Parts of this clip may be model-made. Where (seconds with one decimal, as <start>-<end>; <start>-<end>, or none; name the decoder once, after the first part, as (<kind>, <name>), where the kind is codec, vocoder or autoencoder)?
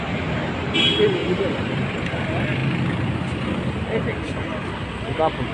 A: 1.2-2.1 (vocoder, BigVGAN v2)